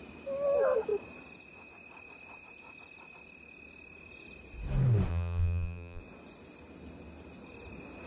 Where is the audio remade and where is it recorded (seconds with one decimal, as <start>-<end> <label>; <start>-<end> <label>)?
0.0-5.1 recorded; 5.1-6.0 remade; 6.0-8.1 recorded